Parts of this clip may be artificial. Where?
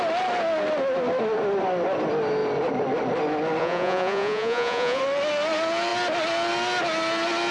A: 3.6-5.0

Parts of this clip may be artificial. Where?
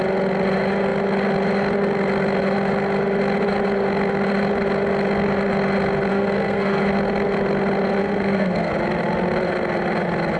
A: 6.1-6.8; 8.0-8.7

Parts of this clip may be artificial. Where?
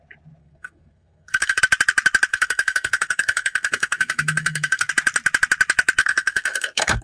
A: 0.4-1.6; 2.3-4.9; 6.0-7.0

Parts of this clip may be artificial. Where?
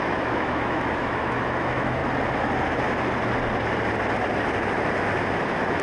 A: 0.0-2.0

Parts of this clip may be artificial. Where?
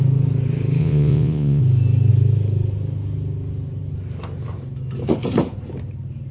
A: 0.8-1.6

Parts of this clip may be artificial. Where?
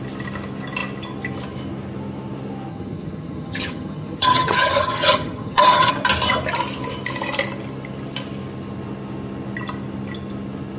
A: 2.7-5.9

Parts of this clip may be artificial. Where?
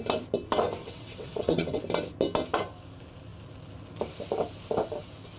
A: 0.8-1.8